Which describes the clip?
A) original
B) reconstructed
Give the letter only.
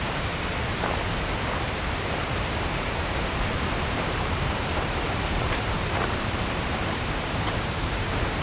B